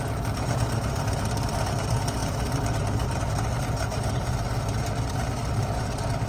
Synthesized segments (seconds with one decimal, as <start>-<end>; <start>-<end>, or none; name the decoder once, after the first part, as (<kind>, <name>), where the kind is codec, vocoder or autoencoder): 2.2-3.2 (vocoder, BigVGAN v2)